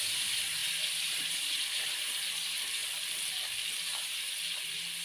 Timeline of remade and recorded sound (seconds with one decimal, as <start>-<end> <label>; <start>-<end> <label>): 0.0-2.8 remade; 2.8-3.8 recorded; 3.8-5.0 remade